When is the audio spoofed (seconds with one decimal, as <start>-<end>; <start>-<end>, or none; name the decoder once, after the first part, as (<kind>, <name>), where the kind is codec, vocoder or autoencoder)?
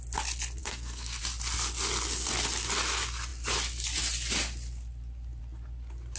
0.6-1.2 (codec, SNAC)